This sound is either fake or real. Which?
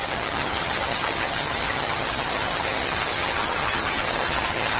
fake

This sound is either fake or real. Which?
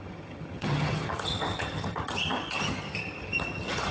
fake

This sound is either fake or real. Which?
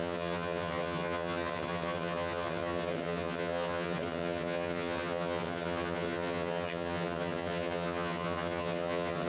fake